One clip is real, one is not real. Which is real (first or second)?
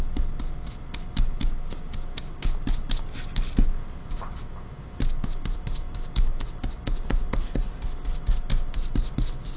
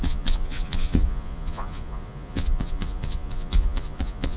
first